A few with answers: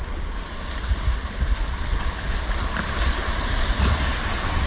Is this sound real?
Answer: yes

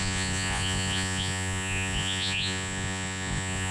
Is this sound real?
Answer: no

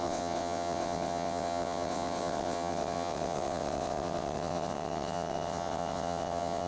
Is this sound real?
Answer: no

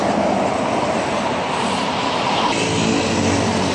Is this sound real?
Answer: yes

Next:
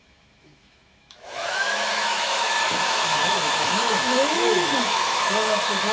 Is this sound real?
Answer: no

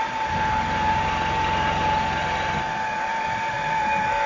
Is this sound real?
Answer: yes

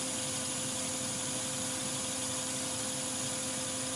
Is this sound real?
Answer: yes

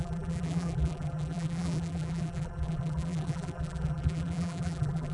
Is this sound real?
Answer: no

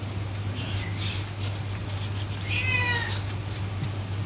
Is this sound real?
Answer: yes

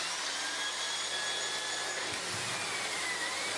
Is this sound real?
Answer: yes